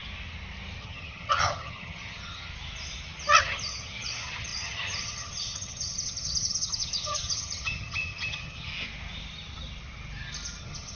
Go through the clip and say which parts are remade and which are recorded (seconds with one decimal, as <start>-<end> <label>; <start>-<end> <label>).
0.0-0.8 recorded; 0.8-2.5 remade; 2.5-3.4 recorded; 3.4-8.7 remade; 8.7-10.6 recorded; 10.6-11.0 remade